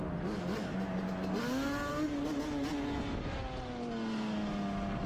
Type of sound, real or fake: real